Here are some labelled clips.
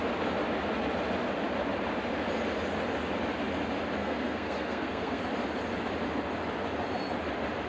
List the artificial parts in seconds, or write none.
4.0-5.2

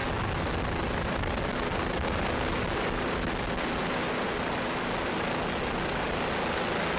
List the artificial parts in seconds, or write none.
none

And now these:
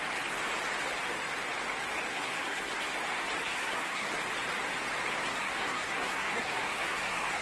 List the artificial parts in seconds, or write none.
2.1-2.7; 3.5-4.1; 5.4-7.4

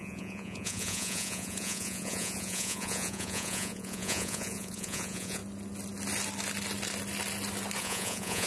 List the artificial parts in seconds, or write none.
0.0-5.4; 7.8-8.5

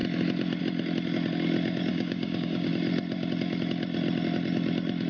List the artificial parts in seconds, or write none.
1.9-2.7

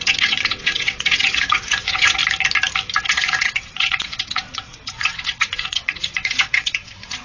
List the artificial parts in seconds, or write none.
0.0-2.2; 3.0-7.2

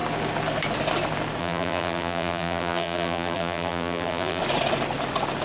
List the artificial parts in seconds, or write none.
1.4-4.4

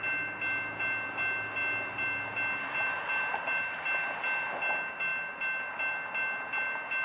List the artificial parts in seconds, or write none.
none